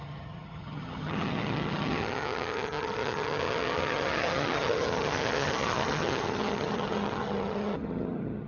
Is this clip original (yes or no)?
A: no